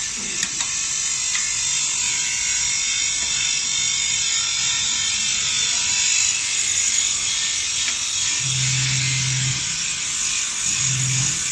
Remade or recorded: recorded